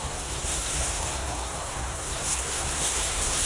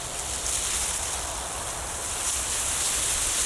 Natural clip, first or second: second